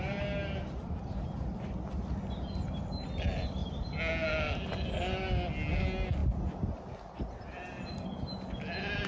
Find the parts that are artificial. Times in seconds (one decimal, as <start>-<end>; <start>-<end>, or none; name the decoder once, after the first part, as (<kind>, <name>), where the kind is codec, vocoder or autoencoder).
none